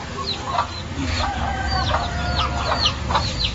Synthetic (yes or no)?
no